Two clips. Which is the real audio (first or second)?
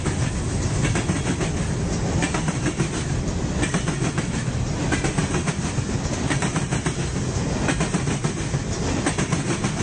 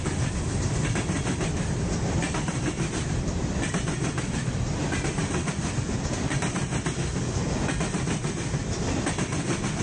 first